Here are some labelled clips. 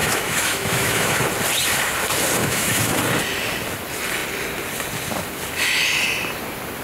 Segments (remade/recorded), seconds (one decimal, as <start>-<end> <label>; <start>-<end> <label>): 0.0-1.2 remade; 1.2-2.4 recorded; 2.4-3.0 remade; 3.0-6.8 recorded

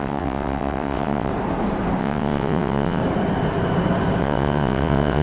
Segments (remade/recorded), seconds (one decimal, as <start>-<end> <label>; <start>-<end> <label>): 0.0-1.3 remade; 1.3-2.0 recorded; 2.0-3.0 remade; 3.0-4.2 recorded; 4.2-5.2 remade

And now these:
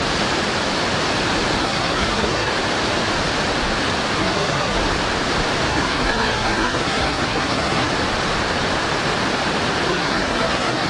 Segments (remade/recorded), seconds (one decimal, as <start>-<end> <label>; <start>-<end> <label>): 0.0-1.6 recorded; 1.6-2.5 remade; 2.5-4.2 recorded; 4.2-4.8 remade; 4.8-5.7 recorded; 5.7-7.9 remade; 7.9-9.9 recorded; 9.9-10.9 remade

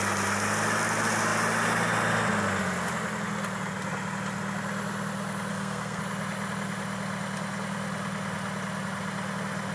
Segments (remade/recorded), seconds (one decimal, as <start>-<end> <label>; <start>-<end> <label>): 0.0-5.5 recorded; 5.5-6.0 remade; 6.0-9.7 recorded